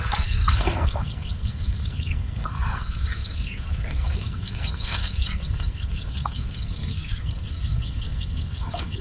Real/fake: fake